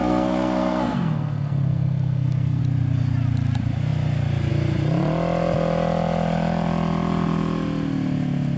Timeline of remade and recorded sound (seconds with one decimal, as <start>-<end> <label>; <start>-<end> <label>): 0.0-2.6 remade; 2.6-8.6 recorded